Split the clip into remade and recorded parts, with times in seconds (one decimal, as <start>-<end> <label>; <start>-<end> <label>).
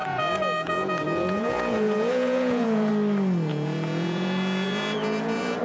0.0-2.9 remade; 2.9-3.5 recorded; 3.5-5.6 remade